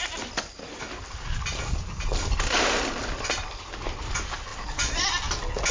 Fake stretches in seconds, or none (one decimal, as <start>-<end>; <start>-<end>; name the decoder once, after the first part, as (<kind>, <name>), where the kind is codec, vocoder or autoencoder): 4.5-5.1 (vocoder, BigVGAN v2)